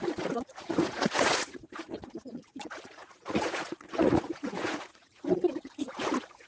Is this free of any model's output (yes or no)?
no